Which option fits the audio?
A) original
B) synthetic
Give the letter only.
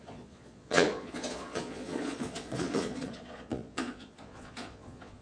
B